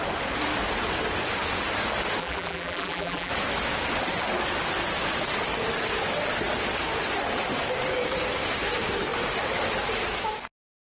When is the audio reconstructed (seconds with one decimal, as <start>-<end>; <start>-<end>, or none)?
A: 2.2-3.3